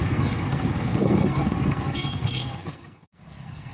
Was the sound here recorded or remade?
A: remade